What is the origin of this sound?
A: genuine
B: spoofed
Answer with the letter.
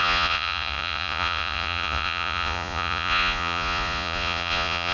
B